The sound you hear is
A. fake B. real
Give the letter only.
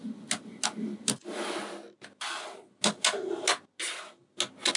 B